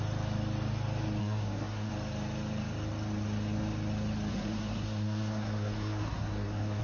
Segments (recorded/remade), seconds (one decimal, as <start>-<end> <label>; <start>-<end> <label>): 0.0-1.2 recorded; 1.2-1.9 remade; 1.9-4.3 recorded; 4.3-6.8 remade